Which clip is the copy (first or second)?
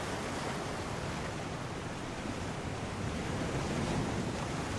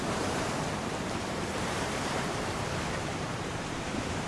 second